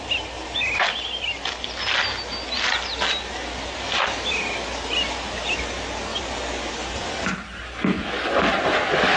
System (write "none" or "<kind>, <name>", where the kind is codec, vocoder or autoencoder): none